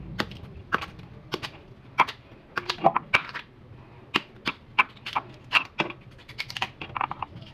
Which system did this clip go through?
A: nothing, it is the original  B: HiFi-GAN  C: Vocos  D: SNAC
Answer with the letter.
A